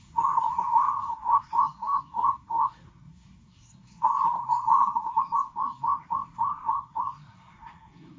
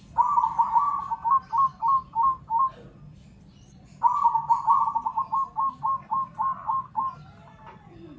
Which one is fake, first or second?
first